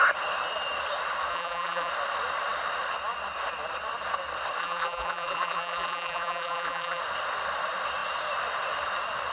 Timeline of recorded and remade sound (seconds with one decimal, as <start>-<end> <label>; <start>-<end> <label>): 0.0-1.3 recorded; 1.3-1.9 remade; 1.9-4.6 recorded; 4.6-7.0 remade; 7.0-9.3 recorded

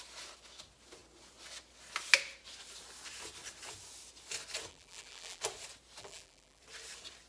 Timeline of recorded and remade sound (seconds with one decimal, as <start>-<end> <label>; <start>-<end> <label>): 0.0-4.7 recorded; 4.7-5.4 remade; 5.4-6.0 recorded; 6.0-6.6 remade; 6.6-7.3 recorded